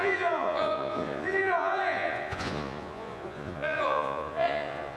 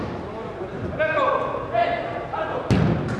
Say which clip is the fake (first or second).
first